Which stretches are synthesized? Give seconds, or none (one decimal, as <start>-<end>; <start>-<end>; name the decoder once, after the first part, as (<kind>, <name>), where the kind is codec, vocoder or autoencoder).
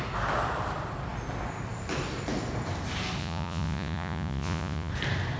3.2-4.9 (vocoder, Vocos)